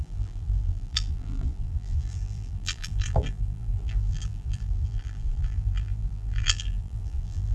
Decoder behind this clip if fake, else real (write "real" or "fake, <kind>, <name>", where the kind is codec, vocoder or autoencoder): fake, vocoder, BigVGAN v2